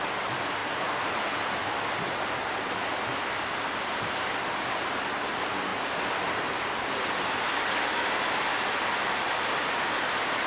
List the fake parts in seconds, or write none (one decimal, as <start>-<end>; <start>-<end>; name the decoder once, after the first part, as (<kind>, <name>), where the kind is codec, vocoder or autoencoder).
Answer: none